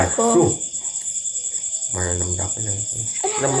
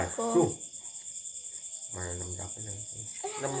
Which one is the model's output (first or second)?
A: first